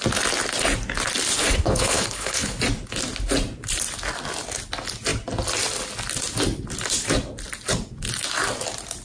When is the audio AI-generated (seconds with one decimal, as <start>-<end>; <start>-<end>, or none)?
1.4-2.6